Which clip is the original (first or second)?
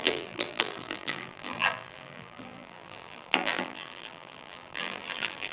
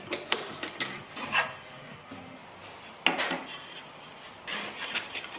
second